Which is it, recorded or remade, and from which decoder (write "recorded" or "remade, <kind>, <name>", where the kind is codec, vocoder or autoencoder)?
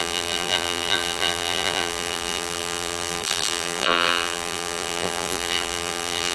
remade, vocoder, BigVGAN v2